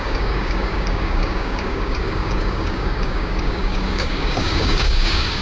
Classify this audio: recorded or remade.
remade